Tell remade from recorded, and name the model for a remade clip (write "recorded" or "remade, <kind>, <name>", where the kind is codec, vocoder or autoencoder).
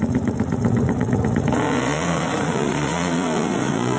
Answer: remade, vocoder, Vocos